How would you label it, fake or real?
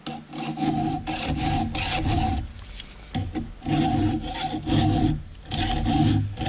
real